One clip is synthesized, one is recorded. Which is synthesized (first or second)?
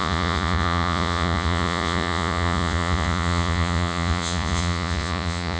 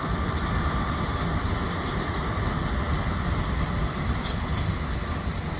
first